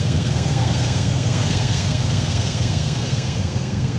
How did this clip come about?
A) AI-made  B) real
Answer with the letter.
A